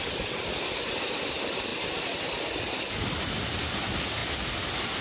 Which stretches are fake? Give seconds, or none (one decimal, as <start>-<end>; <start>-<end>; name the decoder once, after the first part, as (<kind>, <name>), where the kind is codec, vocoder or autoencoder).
none